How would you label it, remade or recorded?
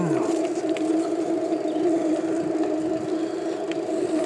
recorded